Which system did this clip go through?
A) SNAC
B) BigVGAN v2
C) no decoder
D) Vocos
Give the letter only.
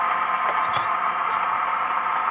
C